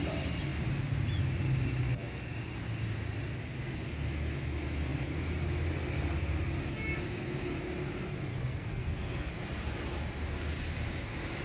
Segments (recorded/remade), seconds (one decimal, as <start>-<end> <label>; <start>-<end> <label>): 0.0-8.3 recorded; 8.3-9.3 remade; 9.3-11.4 recorded